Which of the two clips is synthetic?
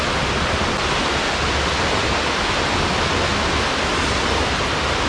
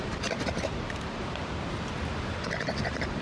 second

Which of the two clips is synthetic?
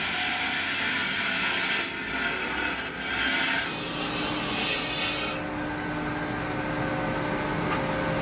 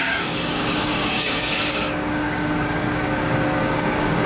second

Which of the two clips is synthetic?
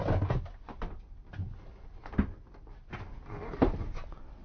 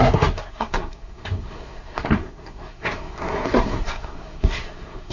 second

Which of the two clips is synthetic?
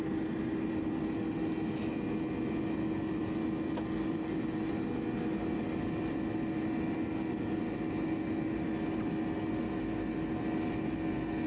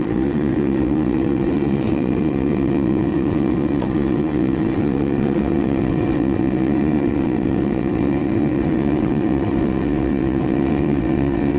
second